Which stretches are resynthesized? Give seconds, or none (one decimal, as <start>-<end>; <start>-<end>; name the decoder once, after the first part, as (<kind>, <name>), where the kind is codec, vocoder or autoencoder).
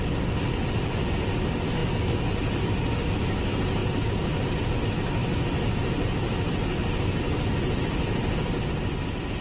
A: none